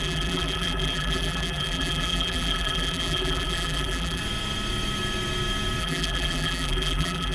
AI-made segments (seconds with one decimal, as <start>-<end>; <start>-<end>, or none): 0.0-4.2; 5.8-7.3